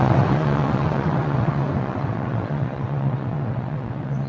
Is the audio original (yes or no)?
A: no